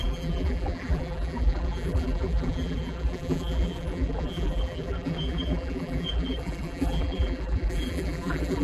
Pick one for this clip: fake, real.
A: fake